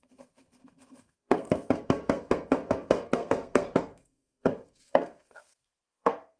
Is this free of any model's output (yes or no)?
no